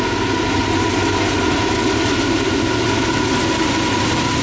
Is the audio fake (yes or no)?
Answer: no